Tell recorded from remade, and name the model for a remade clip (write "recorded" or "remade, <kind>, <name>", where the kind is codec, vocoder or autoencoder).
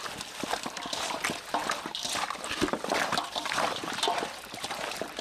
recorded